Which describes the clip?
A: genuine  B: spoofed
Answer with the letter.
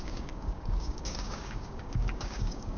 B